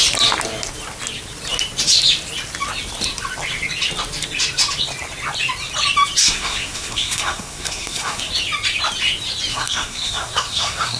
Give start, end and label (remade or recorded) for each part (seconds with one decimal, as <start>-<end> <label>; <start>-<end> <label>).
0.0-6.2 recorded; 6.2-8.3 remade; 8.3-9.5 recorded; 9.5-11.0 remade